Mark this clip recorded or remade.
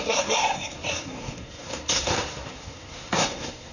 remade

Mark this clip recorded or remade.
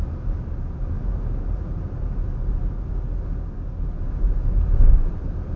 recorded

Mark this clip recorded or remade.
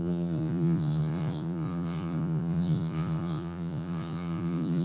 remade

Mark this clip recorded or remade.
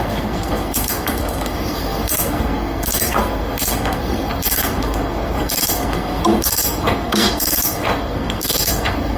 remade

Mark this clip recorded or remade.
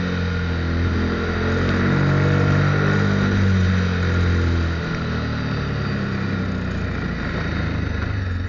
recorded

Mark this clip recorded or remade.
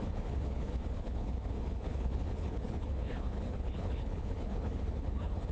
remade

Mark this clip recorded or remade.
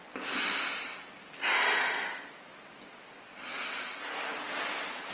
recorded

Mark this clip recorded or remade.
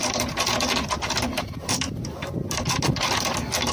recorded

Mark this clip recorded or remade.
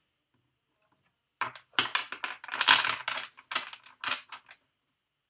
recorded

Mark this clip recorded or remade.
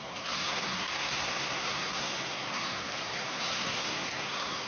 remade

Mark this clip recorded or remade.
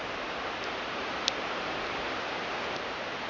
recorded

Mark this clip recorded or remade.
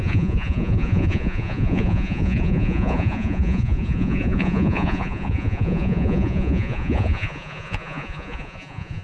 remade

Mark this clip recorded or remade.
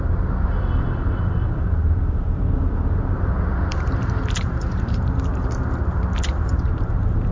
remade